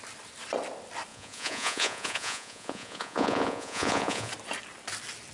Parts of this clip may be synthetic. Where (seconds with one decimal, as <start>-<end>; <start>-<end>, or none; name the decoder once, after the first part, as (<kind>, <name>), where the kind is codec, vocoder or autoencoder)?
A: 1.1-4.3 (vocoder, Vocos)

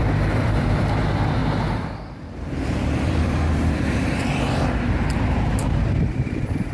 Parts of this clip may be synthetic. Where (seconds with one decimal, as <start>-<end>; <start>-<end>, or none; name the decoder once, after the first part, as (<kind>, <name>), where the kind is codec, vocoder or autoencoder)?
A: 0.0-1.4 (vocoder, BigVGAN v2); 1.9-6.7

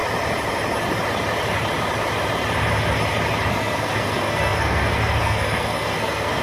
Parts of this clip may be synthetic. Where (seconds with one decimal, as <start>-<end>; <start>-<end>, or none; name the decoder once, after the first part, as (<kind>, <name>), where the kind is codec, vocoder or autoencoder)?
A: 3.5-6.4 (codec, SNAC)

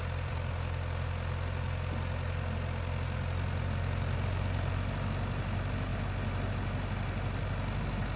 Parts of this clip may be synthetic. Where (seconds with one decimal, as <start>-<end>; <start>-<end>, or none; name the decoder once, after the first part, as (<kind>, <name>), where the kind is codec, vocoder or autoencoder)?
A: none

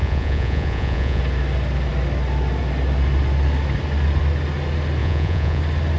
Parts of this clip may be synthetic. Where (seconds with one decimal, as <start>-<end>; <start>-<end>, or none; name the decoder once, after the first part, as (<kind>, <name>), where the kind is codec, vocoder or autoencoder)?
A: 0.0-1.2 (vocoder, Vocos); 5.0-5.6

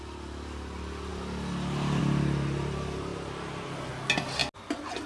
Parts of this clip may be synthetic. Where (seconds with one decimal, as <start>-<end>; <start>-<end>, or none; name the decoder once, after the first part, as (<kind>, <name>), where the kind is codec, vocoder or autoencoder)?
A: none

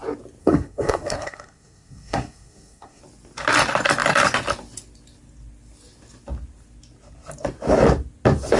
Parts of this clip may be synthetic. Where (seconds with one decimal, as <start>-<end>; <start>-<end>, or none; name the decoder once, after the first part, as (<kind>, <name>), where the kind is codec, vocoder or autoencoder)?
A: 0.4-3.0 (codec, SNAC)

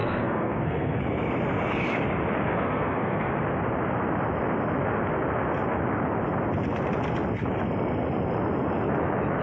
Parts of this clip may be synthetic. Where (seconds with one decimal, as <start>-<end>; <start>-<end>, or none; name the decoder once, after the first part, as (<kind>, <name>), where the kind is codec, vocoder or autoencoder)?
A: 0.0-1.0 (codec, SNAC); 2.5-3.3